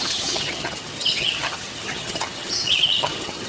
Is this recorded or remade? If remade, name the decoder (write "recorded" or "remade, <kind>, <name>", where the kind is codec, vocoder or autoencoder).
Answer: remade, vocoder, HiFi-GAN